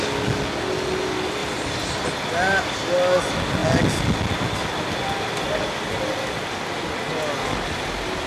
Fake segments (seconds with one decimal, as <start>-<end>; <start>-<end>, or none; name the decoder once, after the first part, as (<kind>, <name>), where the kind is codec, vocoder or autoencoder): 1.4-3.2 (vocoder, BigVGAN v2)